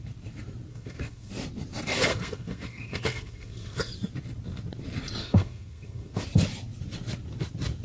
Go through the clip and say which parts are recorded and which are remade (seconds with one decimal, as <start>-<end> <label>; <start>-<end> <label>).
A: 0.0-0.7 recorded; 0.7-1.3 remade; 1.3-2.1 recorded; 2.1-3.9 remade; 3.9-5.2 recorded; 5.2-6.2 remade; 6.2-7.8 recorded